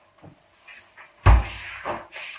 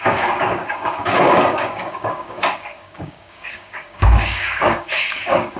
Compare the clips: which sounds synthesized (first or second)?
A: second